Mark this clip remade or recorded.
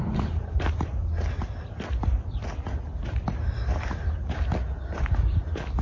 recorded